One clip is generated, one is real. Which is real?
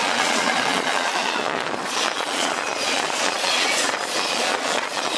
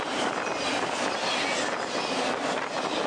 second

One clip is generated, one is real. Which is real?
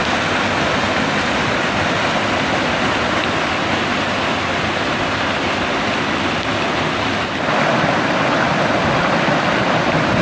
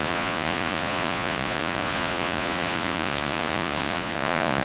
first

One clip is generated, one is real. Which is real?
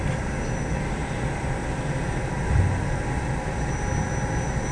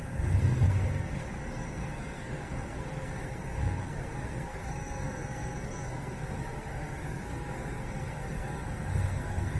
first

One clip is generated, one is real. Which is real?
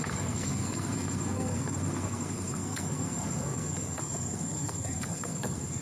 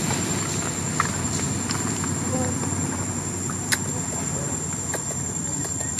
second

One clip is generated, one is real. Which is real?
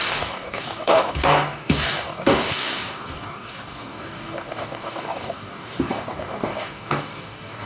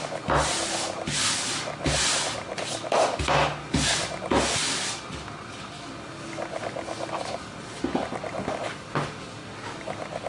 second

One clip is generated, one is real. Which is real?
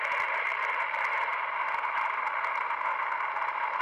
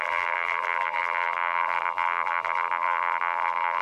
first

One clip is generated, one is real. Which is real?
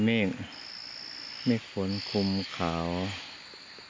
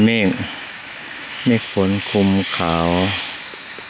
first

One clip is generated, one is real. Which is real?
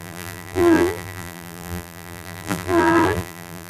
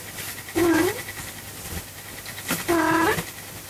second